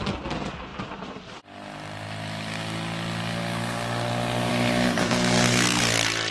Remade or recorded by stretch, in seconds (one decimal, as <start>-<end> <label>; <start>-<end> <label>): 0.0-5.0 recorded; 5.0-5.8 remade; 5.8-6.3 recorded